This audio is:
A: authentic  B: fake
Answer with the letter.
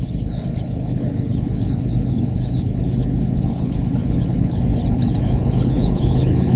B